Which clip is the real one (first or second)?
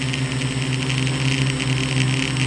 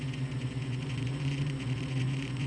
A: first